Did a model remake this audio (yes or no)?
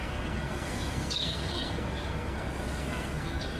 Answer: yes